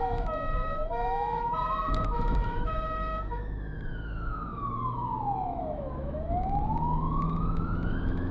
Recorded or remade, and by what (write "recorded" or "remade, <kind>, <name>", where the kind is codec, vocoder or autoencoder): remade, autoencoder, DAC-VAE